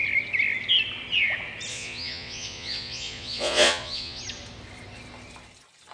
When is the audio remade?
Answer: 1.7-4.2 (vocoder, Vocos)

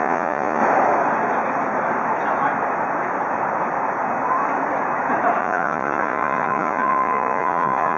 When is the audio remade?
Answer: 0.0-0.6 (vocoder, Vocos); 5.4-8.0

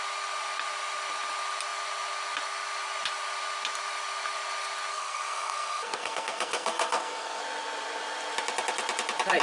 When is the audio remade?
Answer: 4.9-7.4 (codec, SNAC)

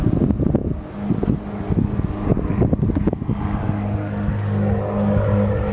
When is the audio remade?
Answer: none